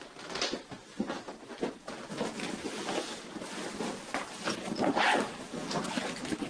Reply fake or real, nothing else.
real